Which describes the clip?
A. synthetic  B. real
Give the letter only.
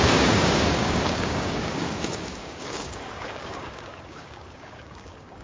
A